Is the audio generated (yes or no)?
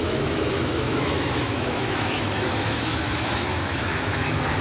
yes